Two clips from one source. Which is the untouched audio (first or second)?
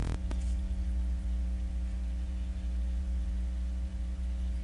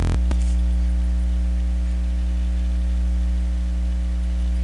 second